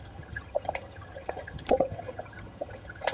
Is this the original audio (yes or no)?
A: no